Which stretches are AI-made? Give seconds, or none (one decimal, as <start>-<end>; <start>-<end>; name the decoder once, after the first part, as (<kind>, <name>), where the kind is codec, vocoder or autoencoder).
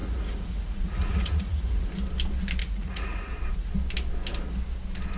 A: 0.0-1.9 (vocoder, Vocos); 2.6-3.7